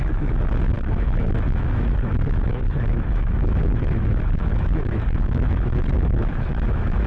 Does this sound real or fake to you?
fake